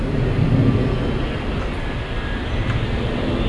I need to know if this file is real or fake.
real